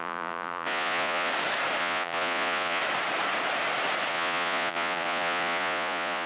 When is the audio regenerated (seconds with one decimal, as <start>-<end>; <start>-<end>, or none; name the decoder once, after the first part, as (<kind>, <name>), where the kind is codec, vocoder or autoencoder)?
0.0-1.3 (vocoder, Vocos); 1.8-2.8; 4.1-6.3